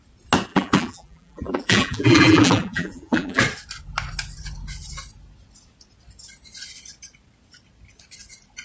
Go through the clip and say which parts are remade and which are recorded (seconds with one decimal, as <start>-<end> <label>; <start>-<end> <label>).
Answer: 0.0-0.5 recorded; 0.5-3.4 remade; 3.4-8.6 recorded